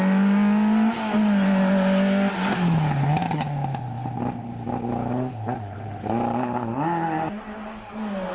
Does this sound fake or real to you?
real